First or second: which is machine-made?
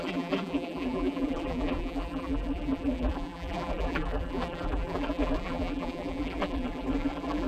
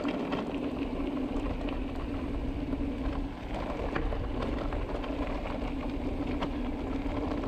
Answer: first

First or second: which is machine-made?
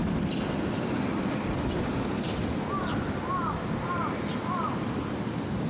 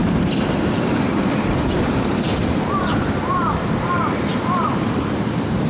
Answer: second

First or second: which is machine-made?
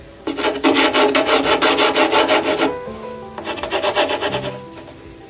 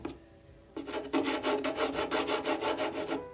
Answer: second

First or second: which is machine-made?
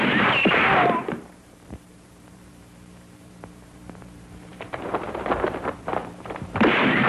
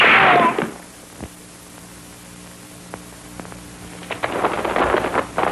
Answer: first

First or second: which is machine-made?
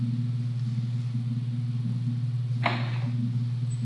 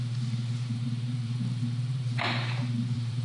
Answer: second